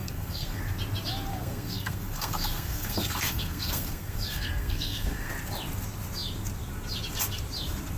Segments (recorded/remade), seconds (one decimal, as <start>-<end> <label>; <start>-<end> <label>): 0.0-0.6 remade; 0.6-1.3 recorded; 1.3-5.3 remade; 5.3-8.0 recorded